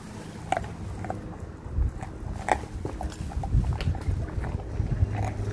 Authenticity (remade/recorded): recorded